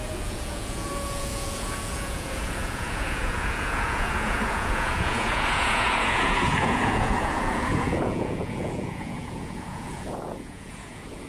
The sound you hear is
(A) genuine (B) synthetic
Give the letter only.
B